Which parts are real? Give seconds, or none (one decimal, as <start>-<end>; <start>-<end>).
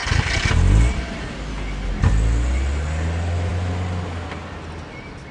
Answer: 0.0-5.3